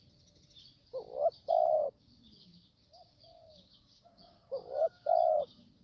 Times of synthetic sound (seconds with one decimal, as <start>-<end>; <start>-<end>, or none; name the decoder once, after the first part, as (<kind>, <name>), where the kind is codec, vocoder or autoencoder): 1.5-5.8 (codec, DAC)